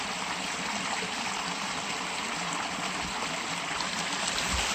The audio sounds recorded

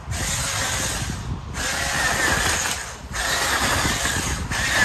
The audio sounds recorded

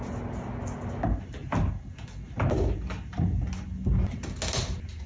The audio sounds recorded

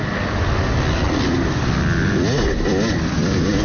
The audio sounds recorded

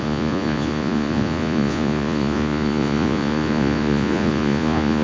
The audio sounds remade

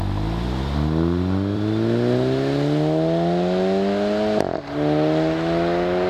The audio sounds recorded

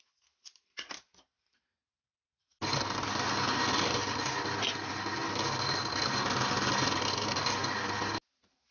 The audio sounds recorded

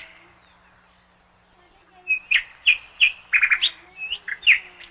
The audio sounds recorded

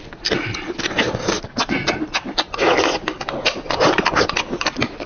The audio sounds recorded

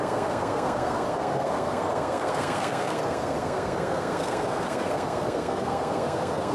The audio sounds remade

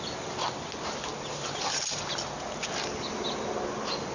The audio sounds recorded